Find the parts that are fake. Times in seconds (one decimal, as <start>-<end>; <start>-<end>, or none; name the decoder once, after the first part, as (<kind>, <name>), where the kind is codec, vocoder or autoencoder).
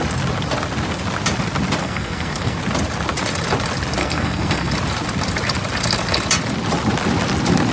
1.8-2.6 (codec, SNAC); 4.0-4.7